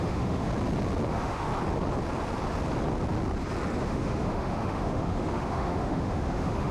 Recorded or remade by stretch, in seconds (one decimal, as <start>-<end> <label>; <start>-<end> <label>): 0.0-0.5 remade; 0.5-1.1 recorded; 1.1-1.5 remade; 1.5-3.8 recorded; 3.8-6.7 remade